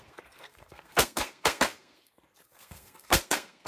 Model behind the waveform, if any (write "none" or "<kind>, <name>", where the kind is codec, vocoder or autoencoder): codec, SNAC